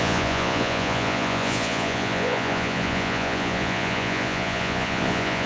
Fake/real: fake